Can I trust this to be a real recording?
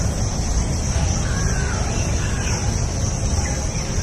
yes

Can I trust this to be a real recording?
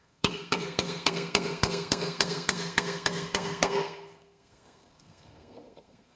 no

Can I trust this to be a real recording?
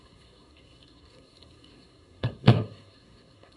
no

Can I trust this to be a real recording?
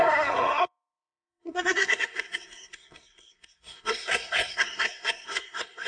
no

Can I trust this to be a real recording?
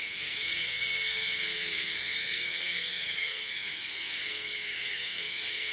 no